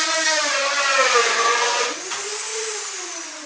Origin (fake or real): fake